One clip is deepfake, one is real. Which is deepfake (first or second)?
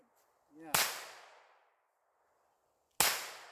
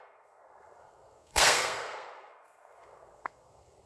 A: second